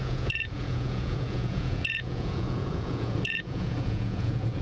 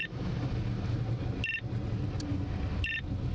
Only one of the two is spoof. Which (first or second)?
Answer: first